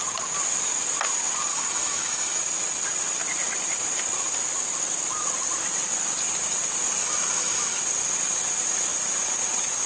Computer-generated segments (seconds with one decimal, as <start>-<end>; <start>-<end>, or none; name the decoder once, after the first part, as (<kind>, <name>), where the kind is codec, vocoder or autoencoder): 1.5-2.4 (autoencoder, DAC-VAE); 7.0-7.8